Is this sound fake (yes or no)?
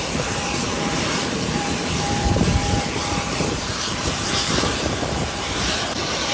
yes